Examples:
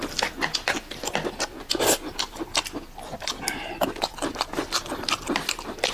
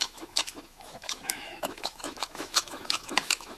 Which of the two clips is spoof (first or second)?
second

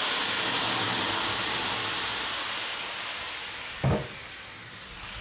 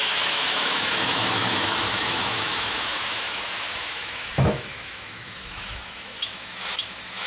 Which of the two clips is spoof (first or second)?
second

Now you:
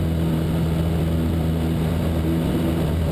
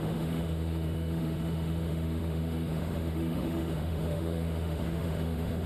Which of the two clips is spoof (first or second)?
second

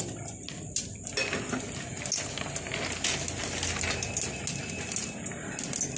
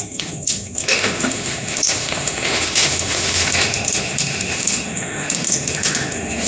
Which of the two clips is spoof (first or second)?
second